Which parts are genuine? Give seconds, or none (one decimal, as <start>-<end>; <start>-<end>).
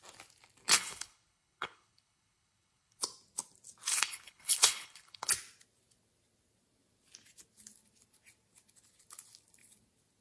0.0-0.7; 3.0-3.9; 5.3-10.2